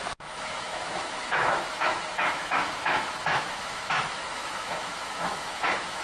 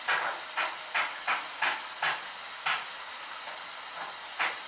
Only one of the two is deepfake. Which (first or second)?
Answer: first